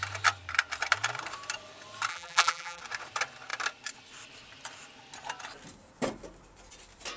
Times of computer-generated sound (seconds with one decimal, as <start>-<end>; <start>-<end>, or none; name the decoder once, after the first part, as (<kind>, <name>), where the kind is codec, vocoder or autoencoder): 2.1-2.8 (vocoder, BigVGAN v2)